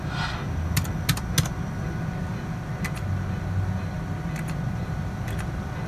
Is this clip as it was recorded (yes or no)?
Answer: yes